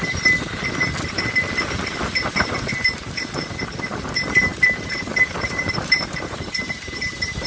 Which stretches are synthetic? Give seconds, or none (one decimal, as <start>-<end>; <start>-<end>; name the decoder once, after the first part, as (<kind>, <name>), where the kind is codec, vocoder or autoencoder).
4.5-7.5 (vocoder, BigVGAN v2)